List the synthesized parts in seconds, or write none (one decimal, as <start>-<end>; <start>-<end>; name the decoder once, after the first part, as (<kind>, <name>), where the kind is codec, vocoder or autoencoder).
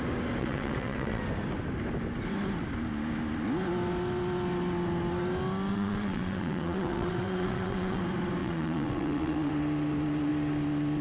0.4-1.2 (vocoder, WaveNeXt); 5.7-8.0; 8.4-9.5